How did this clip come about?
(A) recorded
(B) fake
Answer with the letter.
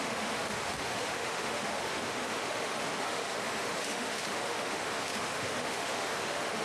B